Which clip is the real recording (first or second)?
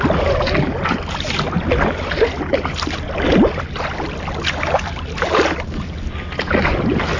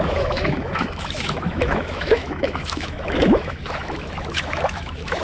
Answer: first